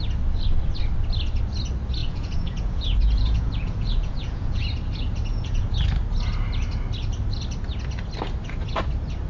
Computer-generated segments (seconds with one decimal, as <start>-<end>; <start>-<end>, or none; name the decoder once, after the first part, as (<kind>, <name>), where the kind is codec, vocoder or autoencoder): 2.0-4.6 (vocoder, Vocos); 5.3-5.8

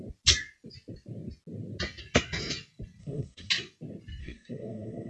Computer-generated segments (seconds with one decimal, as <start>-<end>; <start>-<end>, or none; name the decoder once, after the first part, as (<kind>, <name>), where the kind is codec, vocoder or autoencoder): 3.0-3.5 (codec, SNAC); 4.2-5.1

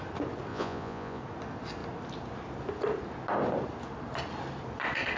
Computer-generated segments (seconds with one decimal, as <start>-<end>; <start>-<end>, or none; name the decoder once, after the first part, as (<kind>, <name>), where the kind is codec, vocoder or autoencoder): 0.5-1.2 (vocoder, Vocos)

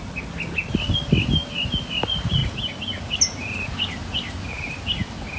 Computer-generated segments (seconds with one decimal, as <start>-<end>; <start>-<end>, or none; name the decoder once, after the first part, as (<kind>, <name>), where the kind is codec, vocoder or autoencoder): none

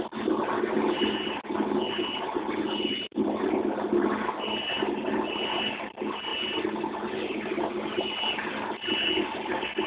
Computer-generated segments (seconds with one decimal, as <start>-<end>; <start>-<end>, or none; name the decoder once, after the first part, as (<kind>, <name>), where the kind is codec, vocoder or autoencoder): none

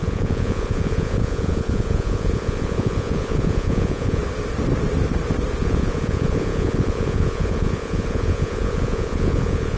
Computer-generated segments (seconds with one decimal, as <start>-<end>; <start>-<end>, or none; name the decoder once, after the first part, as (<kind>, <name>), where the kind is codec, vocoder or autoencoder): 0.0-4.2 (vocoder, Vocos); 5.6-9.8

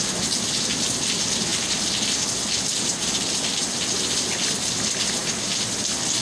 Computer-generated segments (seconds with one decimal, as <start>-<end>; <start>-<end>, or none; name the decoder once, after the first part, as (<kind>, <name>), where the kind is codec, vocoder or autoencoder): none

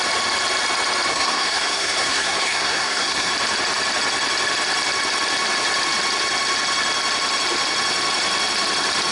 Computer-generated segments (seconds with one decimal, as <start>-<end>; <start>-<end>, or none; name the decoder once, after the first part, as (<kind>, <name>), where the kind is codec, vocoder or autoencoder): 1.1-3.3 (codec, SNAC)